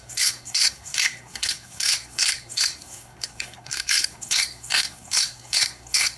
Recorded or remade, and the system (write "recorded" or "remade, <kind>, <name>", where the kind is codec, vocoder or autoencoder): remade, codec, SNAC